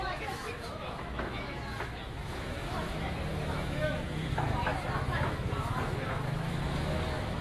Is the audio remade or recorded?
remade